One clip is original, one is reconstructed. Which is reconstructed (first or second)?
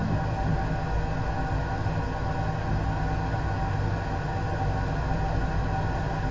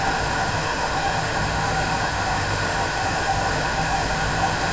second